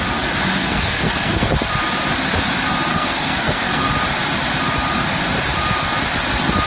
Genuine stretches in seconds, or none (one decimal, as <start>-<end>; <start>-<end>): 0.0-0.6; 1.5-2.9; 3.9-6.7